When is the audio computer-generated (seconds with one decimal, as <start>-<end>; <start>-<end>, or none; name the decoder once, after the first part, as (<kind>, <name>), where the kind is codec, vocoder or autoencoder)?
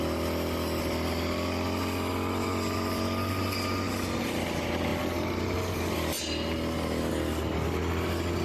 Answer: none